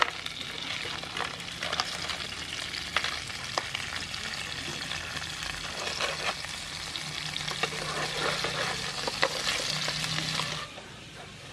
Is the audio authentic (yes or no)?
yes